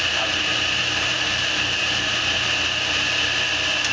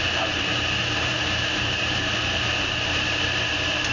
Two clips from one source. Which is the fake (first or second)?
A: second